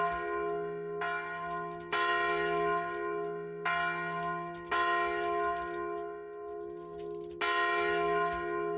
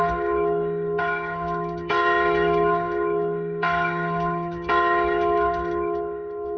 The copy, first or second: second